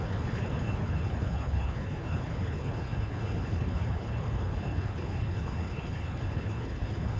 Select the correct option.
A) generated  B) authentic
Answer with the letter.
A